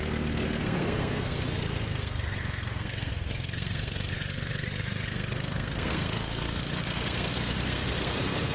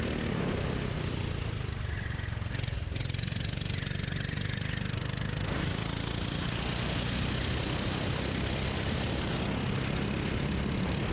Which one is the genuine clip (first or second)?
second